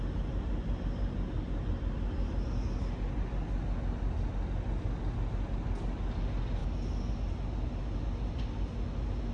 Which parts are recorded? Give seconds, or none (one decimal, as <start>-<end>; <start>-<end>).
0.0-9.3